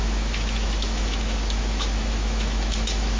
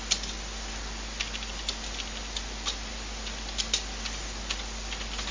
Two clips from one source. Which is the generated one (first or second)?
first